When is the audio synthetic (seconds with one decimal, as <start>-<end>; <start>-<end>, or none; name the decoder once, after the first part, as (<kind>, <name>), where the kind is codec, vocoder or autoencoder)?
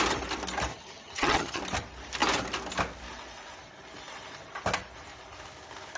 0.7-1.6 (vocoder, HiFi-GAN)